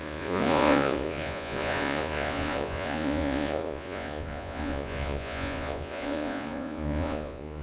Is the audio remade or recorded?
remade